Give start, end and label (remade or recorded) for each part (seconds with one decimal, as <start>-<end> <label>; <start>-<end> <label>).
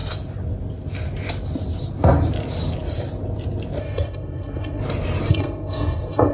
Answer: 0.0-3.8 recorded; 3.8-4.8 remade; 4.8-5.3 recorded; 5.3-6.3 remade